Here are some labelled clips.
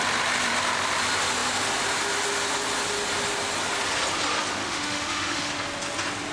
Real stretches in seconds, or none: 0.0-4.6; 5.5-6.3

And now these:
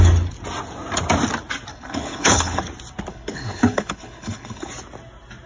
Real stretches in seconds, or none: 0.0-1.7; 2.6-3.1; 4.7-5.5

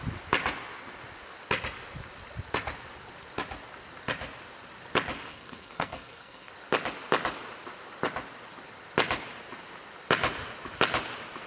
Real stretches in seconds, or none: 0.0-5.3; 6.5-11.5

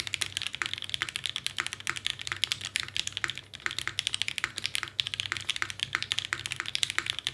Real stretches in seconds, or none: 0.0-7.3